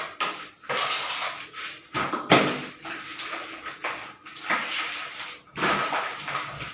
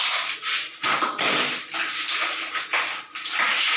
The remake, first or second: second